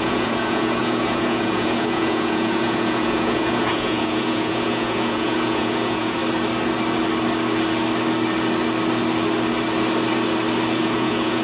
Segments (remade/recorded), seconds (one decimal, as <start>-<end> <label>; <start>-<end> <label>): 0.0-6.2 remade; 6.2-10.8 recorded; 10.8-11.4 remade